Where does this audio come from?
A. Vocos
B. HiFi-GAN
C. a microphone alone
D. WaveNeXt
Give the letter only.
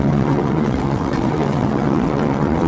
D